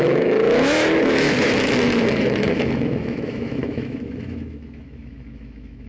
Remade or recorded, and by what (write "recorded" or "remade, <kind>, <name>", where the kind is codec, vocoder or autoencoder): remade, autoencoder, DAC-VAE